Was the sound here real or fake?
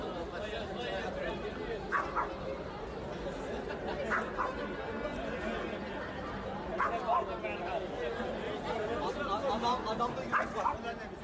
real